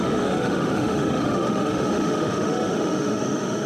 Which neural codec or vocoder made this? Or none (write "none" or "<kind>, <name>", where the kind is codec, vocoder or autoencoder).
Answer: autoencoder, DAC-VAE